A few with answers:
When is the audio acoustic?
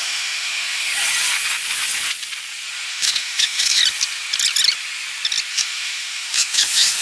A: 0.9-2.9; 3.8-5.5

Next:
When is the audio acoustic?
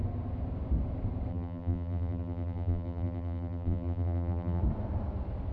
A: 0.0-1.3; 4.6-5.5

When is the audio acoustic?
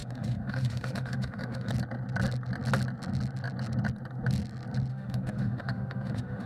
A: 1.7-4.9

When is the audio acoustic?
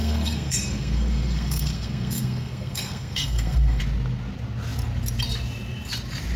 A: 3.8-6.4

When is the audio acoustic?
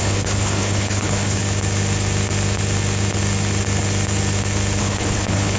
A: 1.4-4.8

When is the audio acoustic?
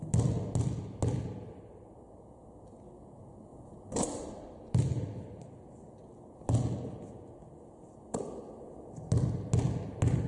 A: 0.0-10.3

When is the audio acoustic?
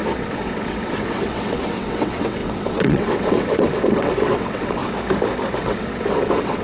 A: 4.8-5.6